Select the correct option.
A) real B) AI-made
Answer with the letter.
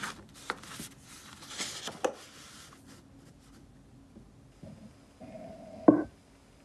A